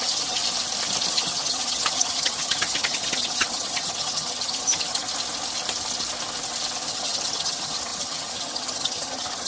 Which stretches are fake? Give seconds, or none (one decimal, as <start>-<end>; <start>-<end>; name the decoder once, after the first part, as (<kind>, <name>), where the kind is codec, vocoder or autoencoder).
0.0-0.4 (vocoder, HiFi-GAN); 1.1-5.1; 6.9-9.5